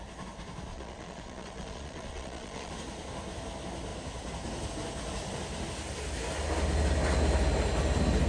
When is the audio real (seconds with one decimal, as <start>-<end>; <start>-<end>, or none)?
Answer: 0.0-0.7; 2.7-8.3